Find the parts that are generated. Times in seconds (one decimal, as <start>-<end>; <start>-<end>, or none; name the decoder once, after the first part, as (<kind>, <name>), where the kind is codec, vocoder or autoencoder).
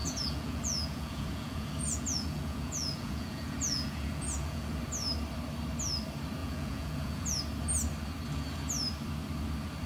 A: 0.0-4.8 (vocoder, Vocos); 6.4-7.4